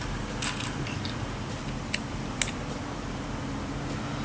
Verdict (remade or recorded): recorded